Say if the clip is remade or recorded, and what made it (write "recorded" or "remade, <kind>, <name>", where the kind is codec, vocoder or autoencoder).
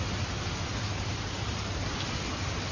recorded